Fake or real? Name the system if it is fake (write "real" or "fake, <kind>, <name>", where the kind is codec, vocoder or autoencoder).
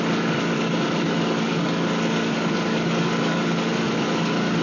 fake, codec, DAC